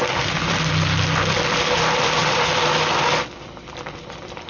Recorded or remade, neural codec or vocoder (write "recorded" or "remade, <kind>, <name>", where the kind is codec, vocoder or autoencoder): recorded